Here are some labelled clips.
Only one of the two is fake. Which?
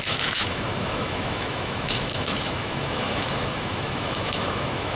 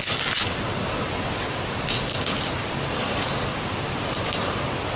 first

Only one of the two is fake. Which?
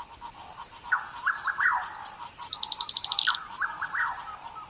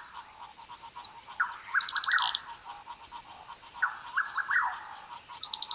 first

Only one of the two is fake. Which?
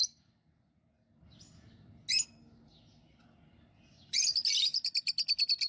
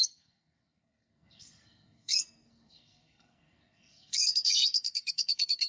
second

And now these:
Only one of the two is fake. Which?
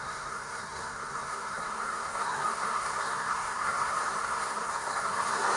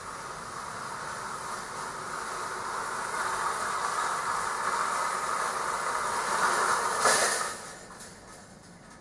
first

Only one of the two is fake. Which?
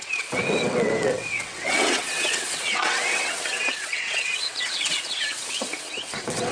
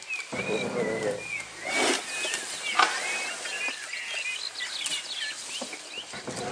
first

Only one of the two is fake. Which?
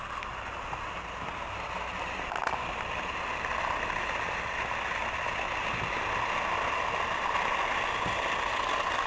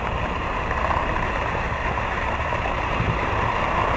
second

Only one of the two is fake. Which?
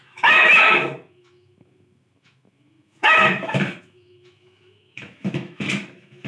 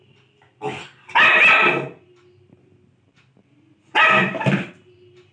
first